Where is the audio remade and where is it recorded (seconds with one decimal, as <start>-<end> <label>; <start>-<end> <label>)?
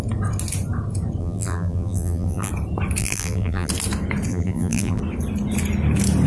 0.0-1.2 recorded; 1.2-2.5 remade; 2.5-3.0 recorded; 3.0-3.7 remade; 3.7-4.3 recorded; 4.3-5.0 remade; 5.0-6.3 recorded